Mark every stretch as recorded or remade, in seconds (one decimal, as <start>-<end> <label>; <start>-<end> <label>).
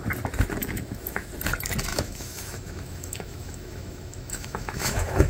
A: 0.0-0.6 recorded; 0.6-1.3 remade; 1.3-1.9 recorded; 1.9-5.3 remade